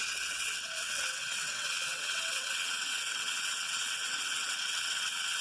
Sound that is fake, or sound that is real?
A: fake